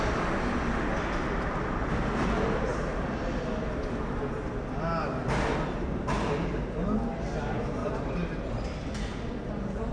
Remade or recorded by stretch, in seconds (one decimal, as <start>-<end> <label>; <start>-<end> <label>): 0.0-2.7 recorded; 2.7-3.3 remade; 3.3-7.8 recorded; 7.8-8.5 remade; 8.5-9.9 recorded